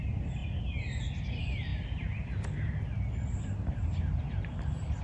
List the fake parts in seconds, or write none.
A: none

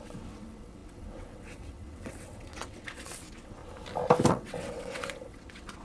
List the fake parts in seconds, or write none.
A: 0.0-3.6 (vocoder, WaveNeXt); 4.3-5.8

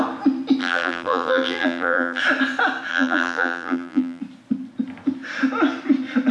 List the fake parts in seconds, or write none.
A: 0.6-2.2 (vocoder, BigVGAN v2); 2.9-4.2

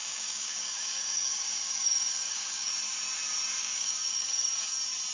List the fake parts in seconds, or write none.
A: 0.0-2.7 (codec, DAC); 3.6-4.5

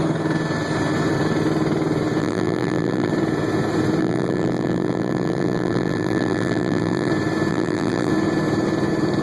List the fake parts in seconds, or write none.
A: 2.2-3.1 (vocoder, BigVGAN v2); 4.0-7.1; 7.5-8.1

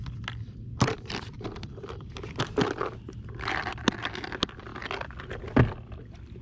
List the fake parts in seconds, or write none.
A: none

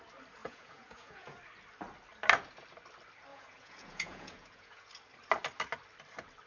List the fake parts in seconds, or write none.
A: 0.4-1.4 (vocoder, Vocos); 3.3-4.9

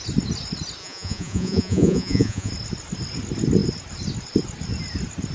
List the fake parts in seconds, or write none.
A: 0.8-2.5 (vocoder, Vocos)